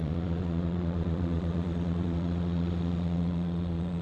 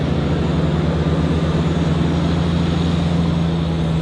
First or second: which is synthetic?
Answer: first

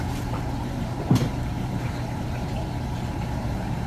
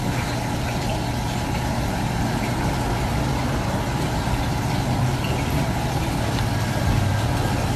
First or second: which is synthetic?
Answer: first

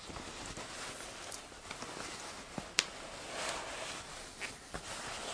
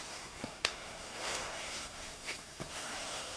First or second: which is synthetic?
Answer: second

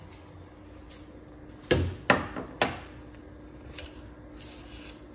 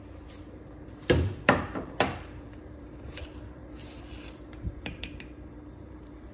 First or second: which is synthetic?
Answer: second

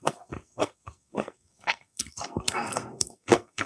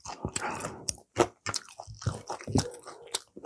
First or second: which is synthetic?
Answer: first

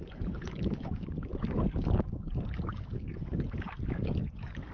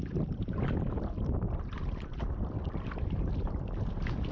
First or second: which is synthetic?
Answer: first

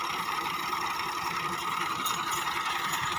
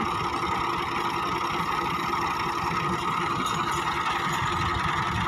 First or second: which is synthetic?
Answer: first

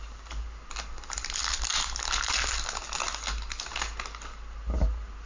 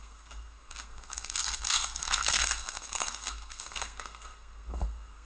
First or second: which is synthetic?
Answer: second